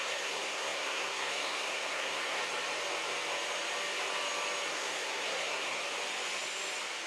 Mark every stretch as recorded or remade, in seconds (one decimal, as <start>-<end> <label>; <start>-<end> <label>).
0.0-2.4 remade; 2.4-4.7 recorded; 4.7-5.8 remade; 5.8-7.1 recorded

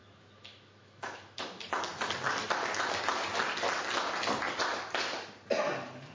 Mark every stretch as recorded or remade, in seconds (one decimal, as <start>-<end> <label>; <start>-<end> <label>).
0.0-1.4 remade; 1.4-6.1 recorded

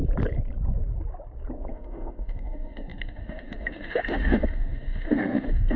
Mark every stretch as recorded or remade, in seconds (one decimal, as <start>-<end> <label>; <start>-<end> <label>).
0.0-1.7 recorded; 1.7-5.8 remade

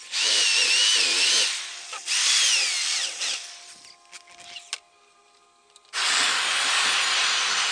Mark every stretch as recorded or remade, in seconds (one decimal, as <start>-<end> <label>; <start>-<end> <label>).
0.0-7.7 recorded

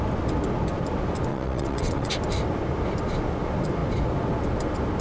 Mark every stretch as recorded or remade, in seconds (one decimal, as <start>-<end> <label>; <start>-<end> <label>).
0.0-1.3 recorded; 1.3-2.1 remade; 2.1-5.0 recorded

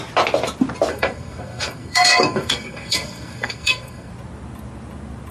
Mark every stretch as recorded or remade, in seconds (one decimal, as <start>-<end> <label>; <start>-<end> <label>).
0.0-0.9 recorded; 0.9-4.1 remade; 4.1-5.3 recorded

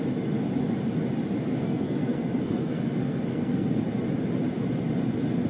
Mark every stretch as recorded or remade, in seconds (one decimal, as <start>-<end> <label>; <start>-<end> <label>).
0.0-1.5 recorded; 1.5-3.8 remade; 3.8-5.5 recorded

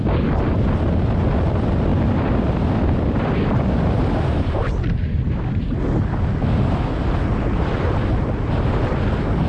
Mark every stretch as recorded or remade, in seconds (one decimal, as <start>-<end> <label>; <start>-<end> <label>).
0.0-1.9 recorded; 1.9-6.2 remade; 6.2-9.5 recorded